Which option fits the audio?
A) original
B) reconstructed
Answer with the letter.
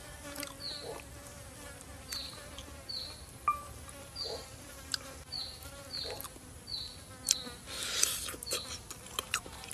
A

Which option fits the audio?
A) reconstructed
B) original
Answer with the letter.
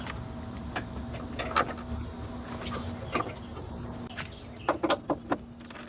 B